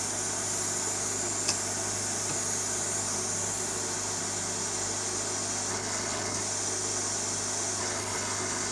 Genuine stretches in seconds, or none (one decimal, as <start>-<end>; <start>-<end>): 0.0-5.7; 6.4-7.8